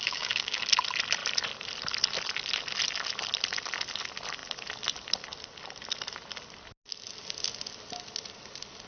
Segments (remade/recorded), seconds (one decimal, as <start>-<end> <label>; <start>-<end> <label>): 0.0-0.6 remade; 0.6-8.9 recorded

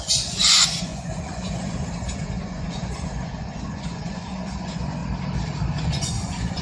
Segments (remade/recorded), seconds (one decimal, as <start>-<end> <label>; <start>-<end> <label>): 0.0-5.0 remade; 5.0-5.8 recorded; 5.8-6.6 remade